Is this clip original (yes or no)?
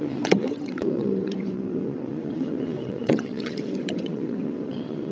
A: no